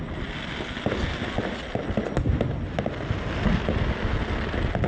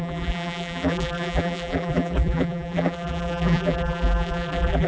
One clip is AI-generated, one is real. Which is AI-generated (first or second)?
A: second